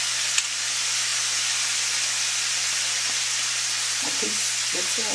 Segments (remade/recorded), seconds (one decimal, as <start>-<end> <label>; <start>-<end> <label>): 0.0-5.1 recorded